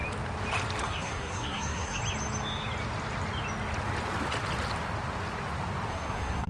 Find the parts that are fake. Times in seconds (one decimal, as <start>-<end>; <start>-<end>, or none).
0.8-2.0; 5.9-6.5